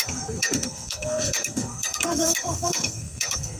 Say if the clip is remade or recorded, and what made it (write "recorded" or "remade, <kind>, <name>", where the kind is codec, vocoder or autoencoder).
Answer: remade, codec, SNAC